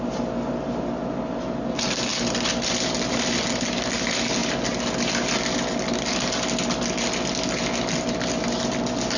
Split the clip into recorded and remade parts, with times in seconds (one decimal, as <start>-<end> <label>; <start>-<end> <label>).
0.0-9.2 recorded